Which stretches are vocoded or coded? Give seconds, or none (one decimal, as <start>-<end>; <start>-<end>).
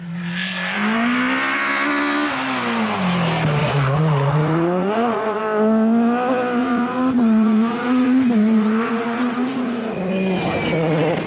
3.6-5.4; 6.6-10.1